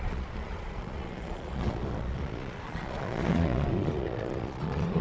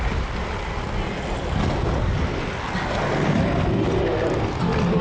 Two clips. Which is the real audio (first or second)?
second